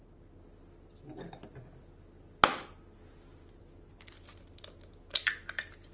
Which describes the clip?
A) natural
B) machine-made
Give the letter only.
A